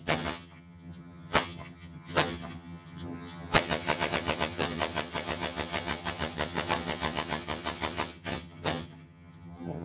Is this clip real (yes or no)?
no